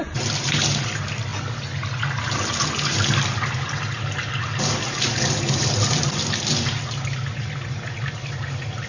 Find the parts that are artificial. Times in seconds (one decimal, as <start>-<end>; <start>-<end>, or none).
none